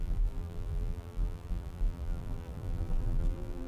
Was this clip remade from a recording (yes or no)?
yes